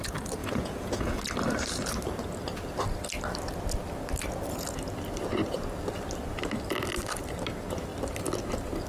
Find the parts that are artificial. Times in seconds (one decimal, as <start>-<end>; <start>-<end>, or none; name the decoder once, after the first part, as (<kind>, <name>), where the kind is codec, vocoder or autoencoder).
0.4-1.2 (vocoder, Vocos)